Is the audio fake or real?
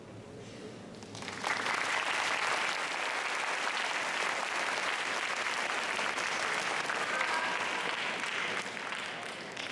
real